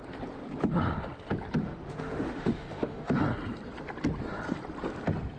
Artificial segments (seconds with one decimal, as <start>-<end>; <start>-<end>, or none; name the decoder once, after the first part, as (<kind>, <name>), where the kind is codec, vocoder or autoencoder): 1.6-3.2 (autoencoder, DAC-VAE)